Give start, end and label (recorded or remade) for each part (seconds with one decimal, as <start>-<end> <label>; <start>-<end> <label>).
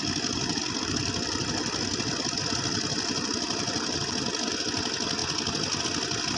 0.0-6.4 recorded